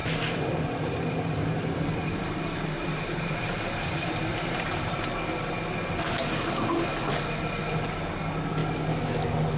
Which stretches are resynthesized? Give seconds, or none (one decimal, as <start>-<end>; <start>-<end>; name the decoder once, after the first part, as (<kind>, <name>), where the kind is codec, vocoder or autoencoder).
0.0-5.2 (vocoder, BigVGAN v2)